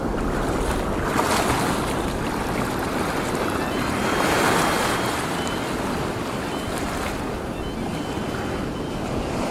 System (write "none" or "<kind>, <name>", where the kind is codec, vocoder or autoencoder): none